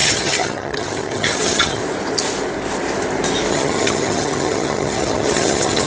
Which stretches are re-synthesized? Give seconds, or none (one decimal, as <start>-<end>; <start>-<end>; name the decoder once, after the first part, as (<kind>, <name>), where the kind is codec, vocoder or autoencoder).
0.0-1.8 (vocoder, HiFi-GAN); 3.5-5.9